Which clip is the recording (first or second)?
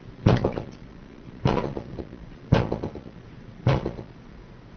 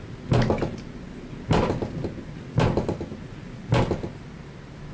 second